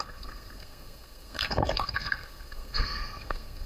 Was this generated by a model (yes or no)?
yes